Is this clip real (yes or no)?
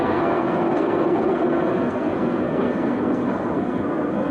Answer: no